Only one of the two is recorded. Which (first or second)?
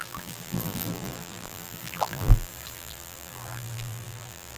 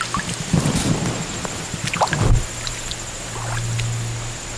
second